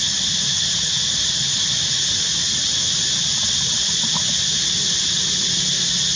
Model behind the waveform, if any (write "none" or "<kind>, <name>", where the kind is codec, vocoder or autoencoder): none